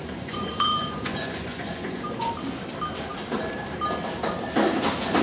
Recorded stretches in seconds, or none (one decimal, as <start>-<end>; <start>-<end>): 2.3-5.2